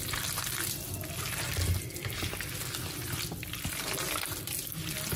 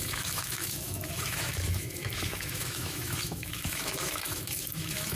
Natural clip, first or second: first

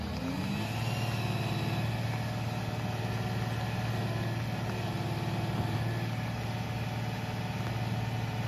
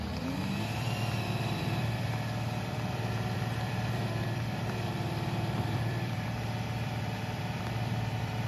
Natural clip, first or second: first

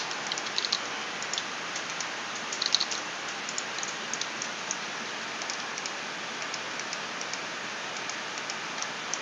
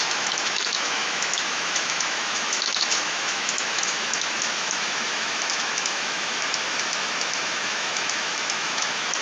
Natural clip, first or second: first